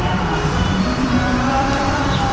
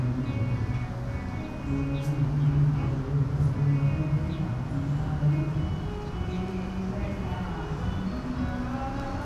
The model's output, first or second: first